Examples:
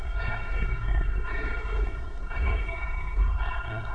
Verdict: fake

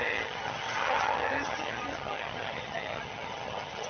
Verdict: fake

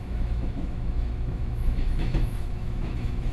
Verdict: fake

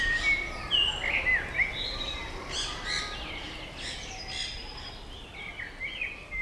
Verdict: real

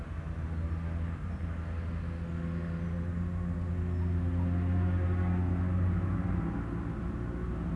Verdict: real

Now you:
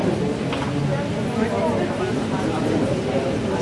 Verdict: real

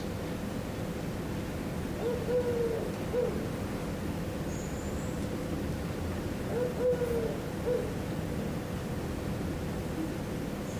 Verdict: real